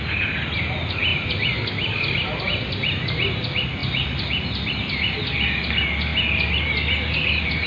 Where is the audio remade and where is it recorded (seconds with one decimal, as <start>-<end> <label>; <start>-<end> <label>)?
0.0-7.7 recorded